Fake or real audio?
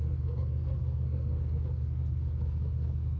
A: fake